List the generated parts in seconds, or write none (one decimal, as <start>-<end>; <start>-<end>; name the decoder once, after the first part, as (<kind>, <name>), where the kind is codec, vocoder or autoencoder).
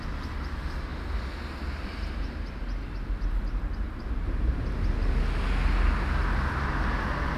none